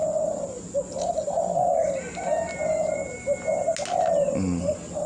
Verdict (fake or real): real